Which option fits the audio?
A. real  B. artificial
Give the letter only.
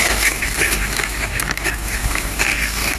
B